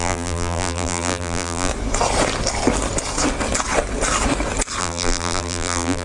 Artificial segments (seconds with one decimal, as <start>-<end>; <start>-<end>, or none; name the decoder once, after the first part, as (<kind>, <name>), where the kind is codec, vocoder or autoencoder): 0.0-1.7 (vocoder, BigVGAN v2); 4.8-6.0